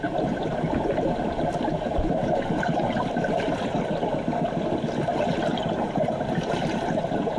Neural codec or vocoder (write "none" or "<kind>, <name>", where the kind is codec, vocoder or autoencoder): vocoder, BigVGAN v2